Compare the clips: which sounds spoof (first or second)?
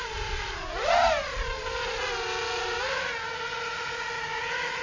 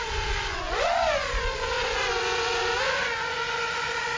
second